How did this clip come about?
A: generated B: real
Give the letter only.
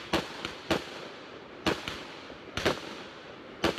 B